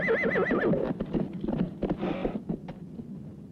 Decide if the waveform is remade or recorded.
recorded